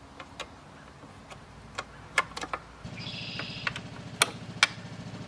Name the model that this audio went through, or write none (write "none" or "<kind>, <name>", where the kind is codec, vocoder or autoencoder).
none